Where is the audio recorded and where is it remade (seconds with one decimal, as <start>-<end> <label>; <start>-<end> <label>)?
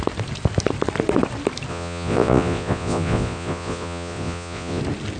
0.0-1.7 recorded; 1.7-4.8 remade; 4.8-5.2 recorded